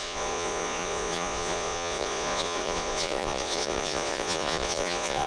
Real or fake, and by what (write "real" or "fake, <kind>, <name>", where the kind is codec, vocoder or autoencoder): fake, vocoder, Vocos